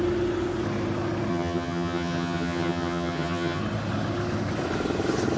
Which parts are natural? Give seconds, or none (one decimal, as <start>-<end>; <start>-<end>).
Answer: 0.0-1.3; 3.6-5.4